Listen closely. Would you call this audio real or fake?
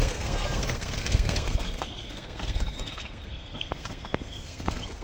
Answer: fake